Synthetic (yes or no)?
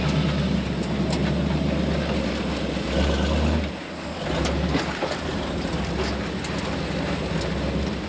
no